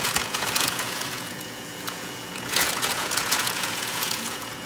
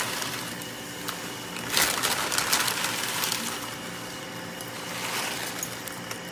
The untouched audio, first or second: second